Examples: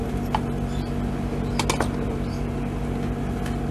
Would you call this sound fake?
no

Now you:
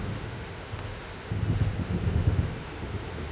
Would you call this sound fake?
yes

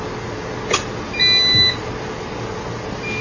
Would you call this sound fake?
no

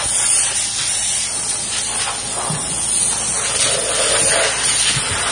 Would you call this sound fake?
no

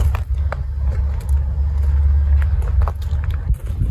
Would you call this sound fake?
no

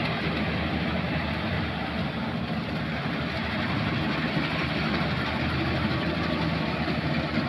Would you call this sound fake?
no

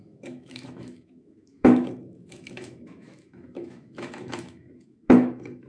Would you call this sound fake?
yes